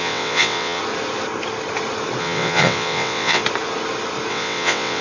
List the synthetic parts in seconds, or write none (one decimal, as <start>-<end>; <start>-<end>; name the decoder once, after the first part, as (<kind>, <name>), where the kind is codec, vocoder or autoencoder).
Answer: 0.0-0.8 (vocoder, WaveNeXt); 2.2-3.4; 4.3-5.0